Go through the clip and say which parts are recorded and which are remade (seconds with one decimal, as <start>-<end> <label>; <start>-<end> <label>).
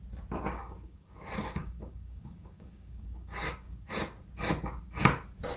0.0-0.5 recorded; 0.5-3.9 remade; 3.9-5.6 recorded